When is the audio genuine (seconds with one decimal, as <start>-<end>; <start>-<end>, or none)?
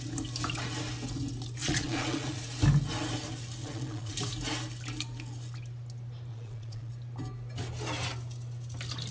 0.0-1.6; 2.4-3.6; 4.1-6.3; 6.9-9.1